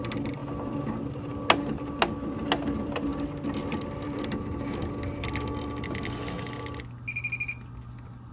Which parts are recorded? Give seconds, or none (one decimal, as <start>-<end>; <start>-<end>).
0.0-3.1; 4.2-8.3